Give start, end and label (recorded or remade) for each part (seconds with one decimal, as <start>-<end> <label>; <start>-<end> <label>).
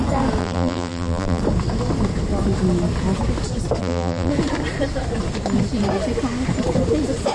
0.0-0.4 recorded; 0.4-1.4 remade; 1.4-3.8 recorded; 3.8-4.3 remade; 4.3-7.3 recorded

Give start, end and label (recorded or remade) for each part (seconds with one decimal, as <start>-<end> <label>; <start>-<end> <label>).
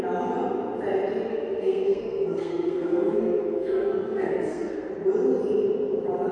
0.0-1.3 recorded; 1.3-4.9 remade; 4.9-6.3 recorded